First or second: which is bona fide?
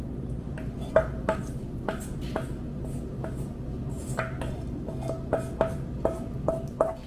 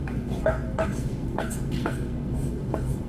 first